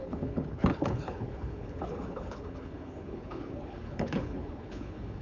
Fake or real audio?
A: fake